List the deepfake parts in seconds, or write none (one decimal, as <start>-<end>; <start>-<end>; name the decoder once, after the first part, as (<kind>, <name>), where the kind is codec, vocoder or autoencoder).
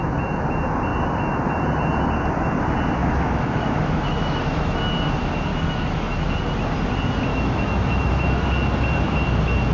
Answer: 3.0-4.8 (autoencoder, DAC-VAE); 5.5-6.3; 7.3-8.1